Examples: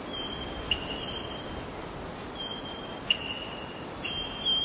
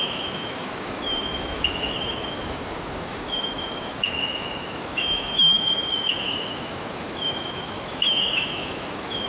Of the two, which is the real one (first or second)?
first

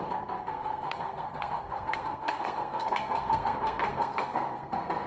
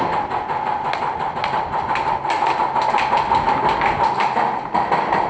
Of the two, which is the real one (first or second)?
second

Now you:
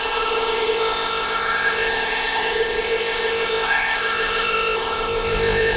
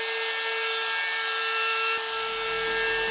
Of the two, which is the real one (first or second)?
second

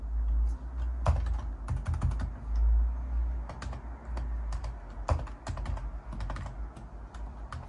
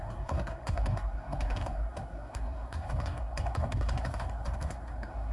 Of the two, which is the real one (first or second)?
first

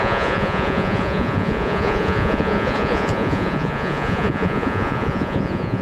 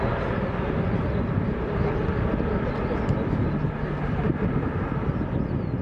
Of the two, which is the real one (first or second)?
second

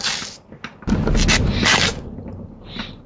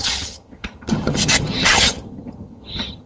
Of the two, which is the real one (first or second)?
first